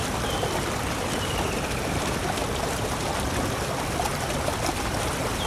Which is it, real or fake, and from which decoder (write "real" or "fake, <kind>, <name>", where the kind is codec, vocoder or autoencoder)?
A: real